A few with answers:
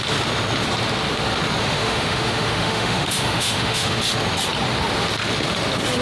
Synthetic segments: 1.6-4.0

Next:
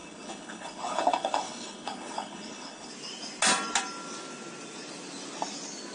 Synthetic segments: 0.0-2.9

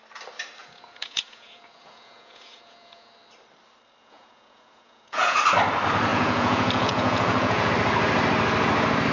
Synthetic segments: 0.6-3.1; 4.0-5.4; 6.1-7.7

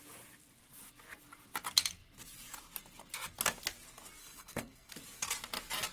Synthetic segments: 4.2-4.9

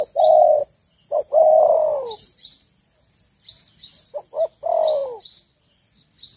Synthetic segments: 0.6-3.1

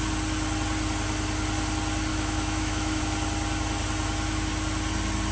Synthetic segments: 2.1-3.0

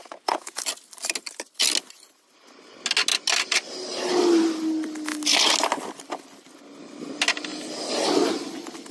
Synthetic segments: 0.0-0.6